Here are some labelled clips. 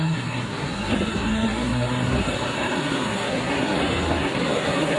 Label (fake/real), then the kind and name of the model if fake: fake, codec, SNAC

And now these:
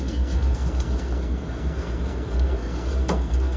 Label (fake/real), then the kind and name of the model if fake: fake, codec, SNAC